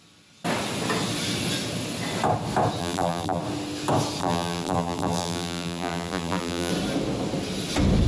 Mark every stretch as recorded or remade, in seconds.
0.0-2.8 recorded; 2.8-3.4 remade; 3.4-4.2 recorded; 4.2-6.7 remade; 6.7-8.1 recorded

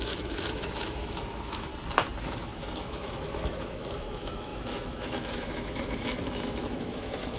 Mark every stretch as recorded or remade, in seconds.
0.0-1.7 remade; 1.7-2.2 recorded; 2.2-7.4 remade

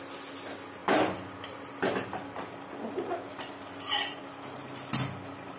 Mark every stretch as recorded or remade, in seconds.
0.0-0.8 recorded; 0.8-4.2 remade; 4.2-5.6 recorded

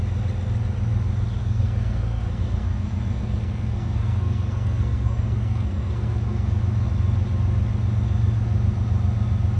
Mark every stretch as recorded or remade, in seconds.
0.0-1.4 recorded; 1.4-6.6 remade; 6.6-9.6 recorded